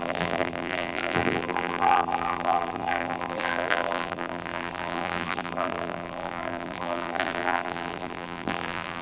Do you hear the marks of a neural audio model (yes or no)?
yes